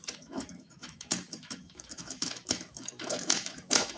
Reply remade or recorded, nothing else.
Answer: remade